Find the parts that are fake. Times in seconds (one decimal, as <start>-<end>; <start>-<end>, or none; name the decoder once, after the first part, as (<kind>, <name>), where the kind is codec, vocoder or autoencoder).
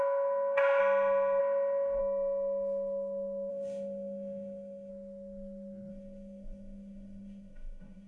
0.0-0.8 (autoencoder, DAC-VAE); 1.4-2.0; 3.5-4.9; 5.9-8.1